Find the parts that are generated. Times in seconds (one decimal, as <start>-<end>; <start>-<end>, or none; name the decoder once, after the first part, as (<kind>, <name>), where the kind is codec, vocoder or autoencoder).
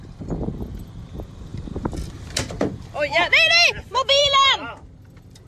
none